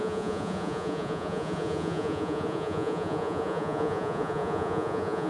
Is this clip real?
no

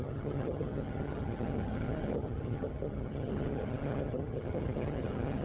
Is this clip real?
no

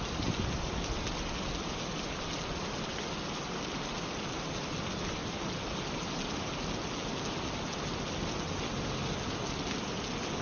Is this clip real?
yes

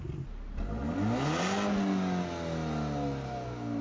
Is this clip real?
yes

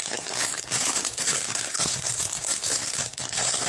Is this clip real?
no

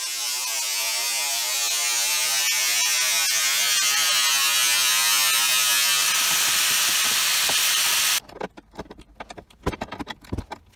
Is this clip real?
yes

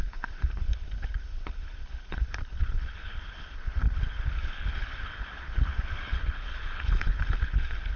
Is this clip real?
no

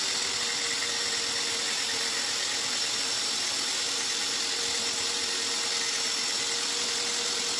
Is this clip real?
yes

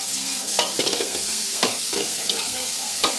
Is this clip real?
no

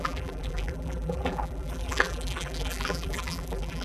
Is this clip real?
no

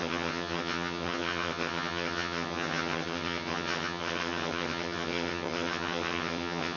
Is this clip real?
no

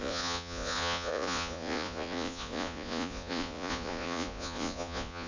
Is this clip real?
no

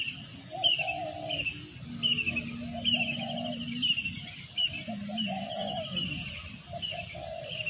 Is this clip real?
yes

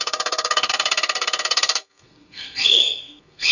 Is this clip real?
no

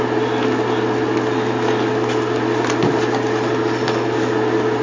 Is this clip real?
yes